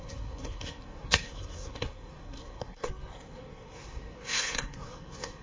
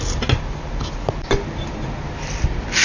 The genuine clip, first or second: second